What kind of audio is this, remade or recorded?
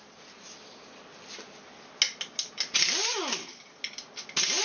recorded